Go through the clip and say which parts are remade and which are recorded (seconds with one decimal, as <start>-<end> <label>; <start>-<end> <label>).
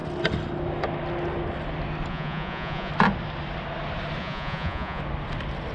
0.0-2.1 recorded; 2.1-2.9 remade; 2.9-4.2 recorded; 4.2-5.0 remade; 5.0-5.7 recorded